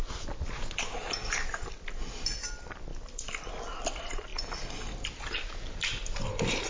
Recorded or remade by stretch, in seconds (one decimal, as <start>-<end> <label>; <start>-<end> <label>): 0.0-6.7 recorded